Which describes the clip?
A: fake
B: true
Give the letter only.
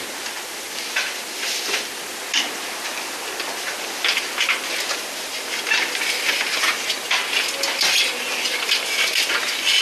B